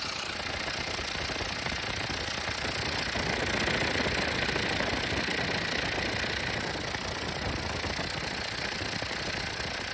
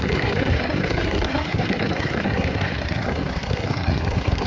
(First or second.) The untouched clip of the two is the first